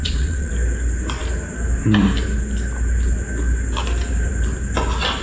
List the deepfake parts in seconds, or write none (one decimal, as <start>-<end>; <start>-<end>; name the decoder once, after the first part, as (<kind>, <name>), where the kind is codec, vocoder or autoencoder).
0.0-0.5 (vocoder, Vocos)